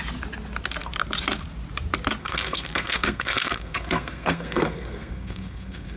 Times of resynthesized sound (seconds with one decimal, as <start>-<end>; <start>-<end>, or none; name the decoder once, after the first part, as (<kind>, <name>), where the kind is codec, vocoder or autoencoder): 2.2-6.0 (codec, SNAC)